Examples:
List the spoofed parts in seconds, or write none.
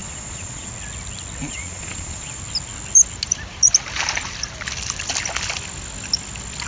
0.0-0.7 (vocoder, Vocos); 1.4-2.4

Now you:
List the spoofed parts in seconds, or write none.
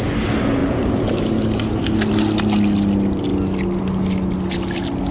0.6-1.8 (vocoder, BigVGAN v2)